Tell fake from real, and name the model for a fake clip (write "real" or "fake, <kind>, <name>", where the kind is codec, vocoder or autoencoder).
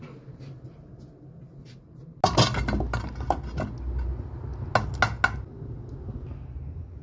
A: real